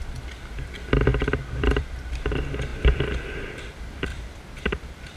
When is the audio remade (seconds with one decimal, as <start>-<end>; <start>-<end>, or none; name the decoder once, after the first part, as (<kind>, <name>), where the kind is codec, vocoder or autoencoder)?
1.1-2.1 (vocoder, BigVGAN v2); 2.7-3.4; 4.1-5.2